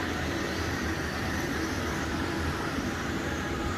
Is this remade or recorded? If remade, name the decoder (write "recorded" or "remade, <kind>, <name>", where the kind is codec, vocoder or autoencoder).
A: recorded